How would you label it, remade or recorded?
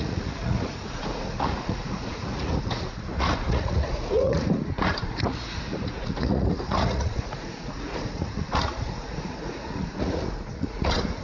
remade